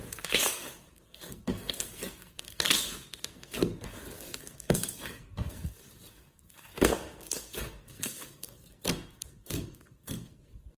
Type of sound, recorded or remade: remade